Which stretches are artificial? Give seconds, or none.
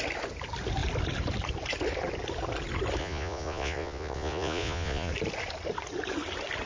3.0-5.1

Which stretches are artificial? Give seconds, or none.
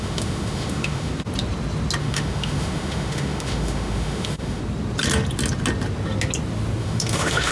0.0-1.1; 2.0-4.6; 6.8-7.5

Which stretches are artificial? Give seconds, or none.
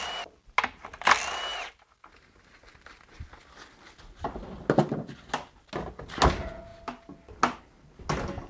1.5-2.6